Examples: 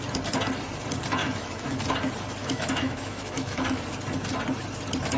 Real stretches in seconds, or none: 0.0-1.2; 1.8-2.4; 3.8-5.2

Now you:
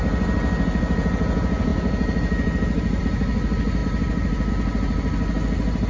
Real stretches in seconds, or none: 0.0-5.9

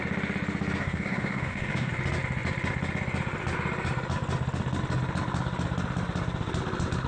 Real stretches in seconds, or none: 0.0-0.8; 1.9-7.1

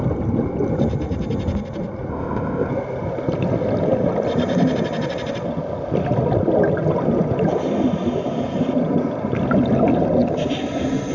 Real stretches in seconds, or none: 0.0-2.1; 2.7-11.1